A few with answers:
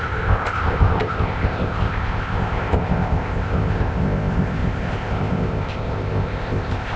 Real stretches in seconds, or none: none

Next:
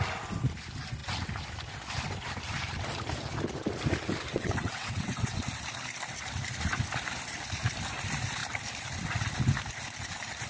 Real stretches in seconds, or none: 0.0-4.3; 5.4-10.5

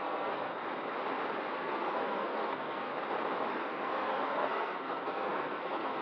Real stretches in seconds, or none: 0.5-1.5; 2.9-3.5